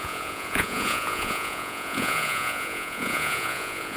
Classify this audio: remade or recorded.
remade